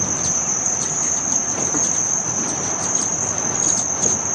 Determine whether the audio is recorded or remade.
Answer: remade